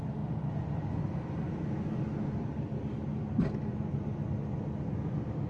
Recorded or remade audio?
recorded